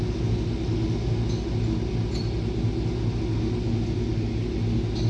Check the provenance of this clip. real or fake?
real